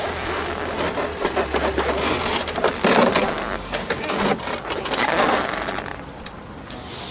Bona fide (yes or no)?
yes